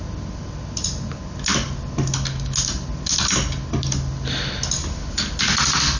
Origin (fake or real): real